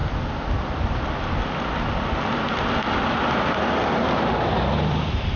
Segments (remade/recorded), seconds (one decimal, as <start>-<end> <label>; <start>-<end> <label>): 0.0-5.4 recorded